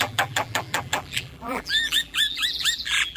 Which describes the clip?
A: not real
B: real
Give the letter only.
A